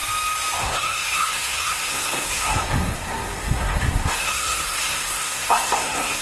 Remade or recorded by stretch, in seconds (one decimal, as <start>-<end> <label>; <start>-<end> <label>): 0.0-0.6 recorded; 0.6-6.2 remade